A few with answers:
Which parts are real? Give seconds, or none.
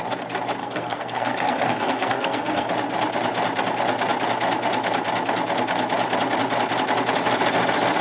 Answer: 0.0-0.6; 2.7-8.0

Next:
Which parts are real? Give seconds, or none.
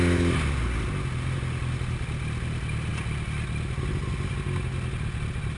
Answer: 0.0-5.6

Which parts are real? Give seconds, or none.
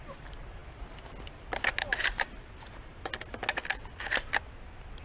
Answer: 0.0-5.0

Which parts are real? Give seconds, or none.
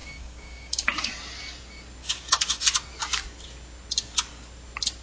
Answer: 1.1-2.0; 2.6-5.0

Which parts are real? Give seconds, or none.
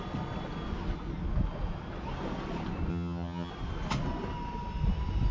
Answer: 0.0-2.9; 3.5-5.3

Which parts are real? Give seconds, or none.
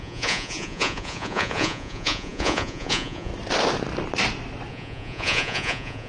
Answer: 3.3-4.7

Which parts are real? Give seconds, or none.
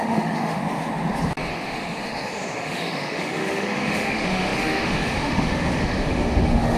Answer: 0.6-1.5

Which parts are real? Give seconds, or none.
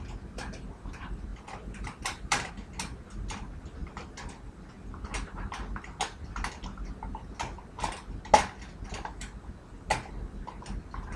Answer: 0.0-1.3; 2.5-11.2